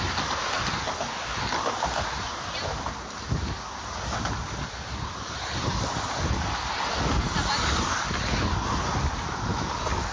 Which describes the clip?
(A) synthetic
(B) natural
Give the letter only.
B